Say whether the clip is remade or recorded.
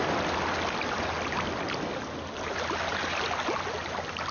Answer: recorded